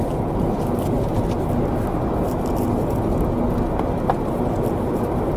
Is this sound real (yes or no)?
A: yes